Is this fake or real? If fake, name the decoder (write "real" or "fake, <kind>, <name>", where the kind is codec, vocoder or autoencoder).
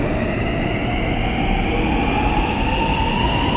real